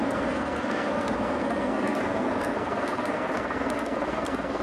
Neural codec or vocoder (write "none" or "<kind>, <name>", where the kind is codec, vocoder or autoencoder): codec, SNAC